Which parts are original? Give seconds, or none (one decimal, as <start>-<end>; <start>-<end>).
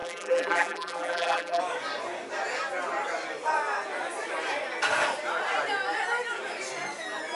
1.6-7.3